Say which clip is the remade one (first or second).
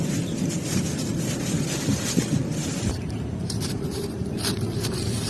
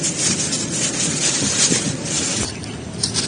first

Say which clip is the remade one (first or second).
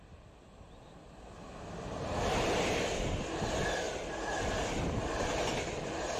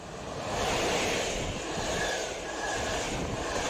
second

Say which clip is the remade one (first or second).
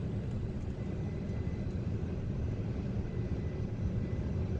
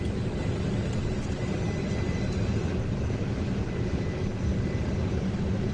first